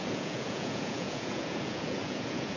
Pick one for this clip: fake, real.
fake